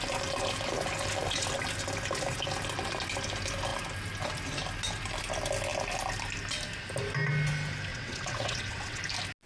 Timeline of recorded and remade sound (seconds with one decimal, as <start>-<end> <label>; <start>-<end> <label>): 0.0-7.9 recorded; 7.9-9.0 remade; 9.0-9.5 recorded